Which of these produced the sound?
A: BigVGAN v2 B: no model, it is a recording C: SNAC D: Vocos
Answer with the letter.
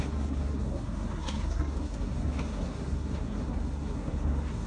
C